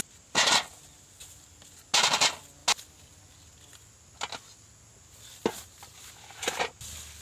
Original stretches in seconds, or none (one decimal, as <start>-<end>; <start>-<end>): 0.0-7.2